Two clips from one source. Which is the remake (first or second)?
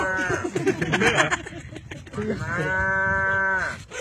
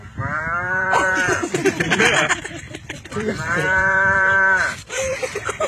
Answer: second